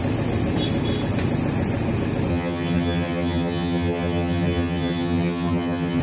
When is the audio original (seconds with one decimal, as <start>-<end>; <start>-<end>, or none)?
0.0-2.3